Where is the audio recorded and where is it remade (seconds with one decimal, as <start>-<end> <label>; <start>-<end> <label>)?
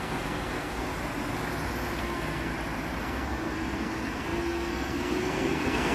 0.0-0.9 remade; 0.9-2.0 recorded; 2.0-2.5 remade; 2.5-3.0 recorded; 3.0-5.9 remade